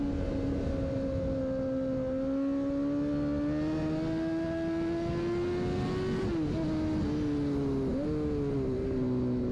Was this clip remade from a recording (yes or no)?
no